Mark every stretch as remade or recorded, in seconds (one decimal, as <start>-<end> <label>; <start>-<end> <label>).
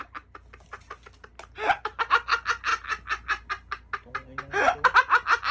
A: 0.0-5.5 recorded